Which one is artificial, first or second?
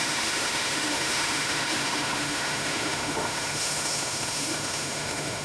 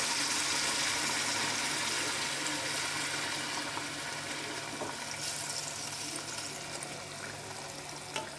first